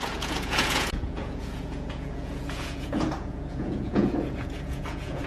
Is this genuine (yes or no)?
no